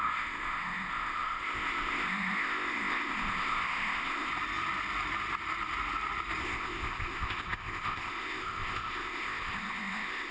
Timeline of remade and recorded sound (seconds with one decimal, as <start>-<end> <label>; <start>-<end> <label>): 0.0-4.3 remade; 4.3-6.4 recorded; 6.4-10.3 remade